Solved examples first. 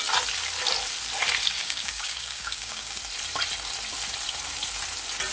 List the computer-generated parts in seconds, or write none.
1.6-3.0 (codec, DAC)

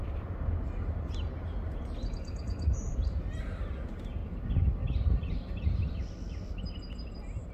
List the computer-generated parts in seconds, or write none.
0.0-4.2 (vocoder, BigVGAN v2)

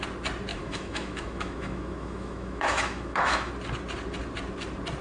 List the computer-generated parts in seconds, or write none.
0.5-3.5 (autoencoder, DAC-VAE)

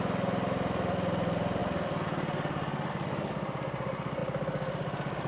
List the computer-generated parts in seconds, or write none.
none

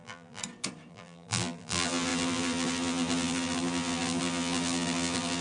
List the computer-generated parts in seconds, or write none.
0.0-0.4 (vocoder, BigVGAN v2); 0.9-5.4

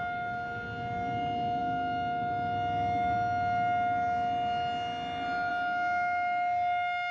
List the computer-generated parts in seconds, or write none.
none

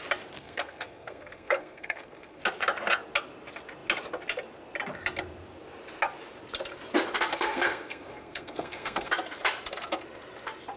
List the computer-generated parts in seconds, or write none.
0.4-2.4 (codec, SNAC); 7.3-9.1

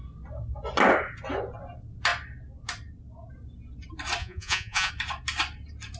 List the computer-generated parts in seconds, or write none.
4.2-4.9 (vocoder, Vocos)